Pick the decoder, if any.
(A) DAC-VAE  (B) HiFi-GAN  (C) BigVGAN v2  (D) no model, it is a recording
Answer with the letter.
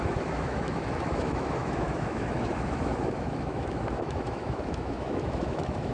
A